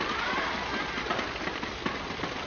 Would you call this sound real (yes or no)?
yes